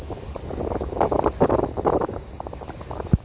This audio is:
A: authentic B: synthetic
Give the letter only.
A